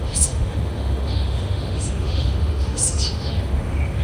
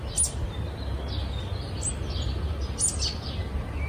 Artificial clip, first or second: first